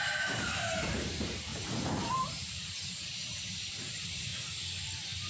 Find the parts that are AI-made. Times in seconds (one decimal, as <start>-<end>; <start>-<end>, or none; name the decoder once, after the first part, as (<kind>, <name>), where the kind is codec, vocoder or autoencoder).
0.0-4.3 (vocoder, BigVGAN v2)